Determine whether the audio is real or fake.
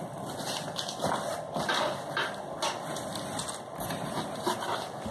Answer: real